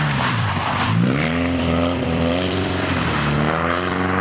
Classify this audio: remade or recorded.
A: remade